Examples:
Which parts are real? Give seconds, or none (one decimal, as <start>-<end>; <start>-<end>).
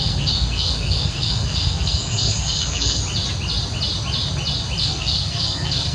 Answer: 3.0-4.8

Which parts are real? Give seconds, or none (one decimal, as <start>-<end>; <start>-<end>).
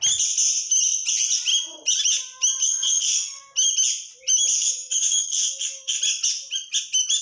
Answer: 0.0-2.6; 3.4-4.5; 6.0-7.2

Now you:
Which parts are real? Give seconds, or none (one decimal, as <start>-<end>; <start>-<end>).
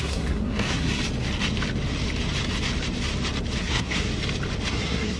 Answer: 1.0-3.6; 4.1-4.7